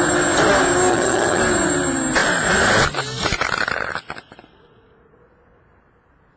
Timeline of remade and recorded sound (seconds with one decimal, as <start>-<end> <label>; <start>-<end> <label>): 0.0-0.9 recorded; 0.9-1.4 remade; 1.4-6.4 recorded